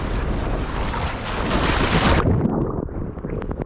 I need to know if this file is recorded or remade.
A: recorded